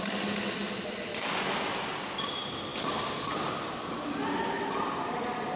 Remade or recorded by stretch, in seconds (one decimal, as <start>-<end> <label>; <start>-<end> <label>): 0.0-5.6 recorded